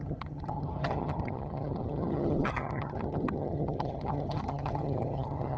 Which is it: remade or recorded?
remade